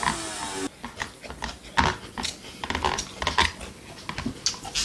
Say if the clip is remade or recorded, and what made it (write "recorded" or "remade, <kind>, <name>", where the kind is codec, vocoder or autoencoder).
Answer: recorded